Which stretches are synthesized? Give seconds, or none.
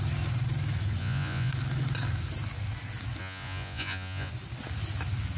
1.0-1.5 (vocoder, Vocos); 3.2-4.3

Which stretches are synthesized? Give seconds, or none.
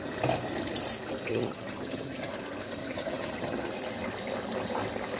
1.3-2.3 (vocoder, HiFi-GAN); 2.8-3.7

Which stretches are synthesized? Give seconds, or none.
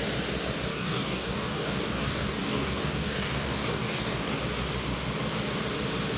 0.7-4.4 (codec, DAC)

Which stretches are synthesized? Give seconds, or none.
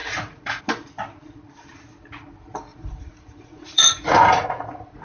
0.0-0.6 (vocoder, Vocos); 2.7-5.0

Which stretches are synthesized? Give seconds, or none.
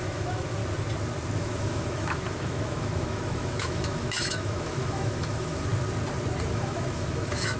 0.0-0.6 (autoencoder, DAC-VAE); 1.4-5.7; 6.5-7.6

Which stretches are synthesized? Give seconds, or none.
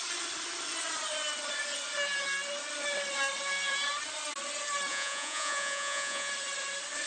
4.9-6.3 (vocoder, Vocos)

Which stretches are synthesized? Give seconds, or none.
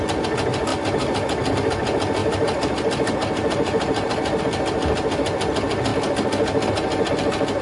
2.2-4.4 (vocoder, BigVGAN v2)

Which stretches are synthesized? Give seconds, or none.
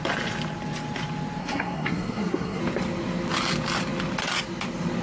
1.4-2.6 (codec, SNAC)